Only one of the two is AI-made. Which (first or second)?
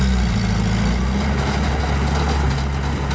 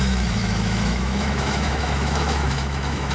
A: second